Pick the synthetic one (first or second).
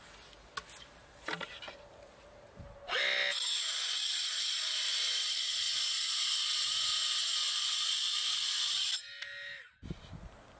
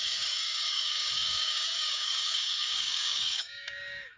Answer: second